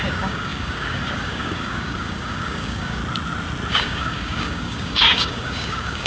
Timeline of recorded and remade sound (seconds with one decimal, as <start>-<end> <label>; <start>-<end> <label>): 0.0-3.0 remade; 3.0-3.7 recorded; 3.7-6.1 remade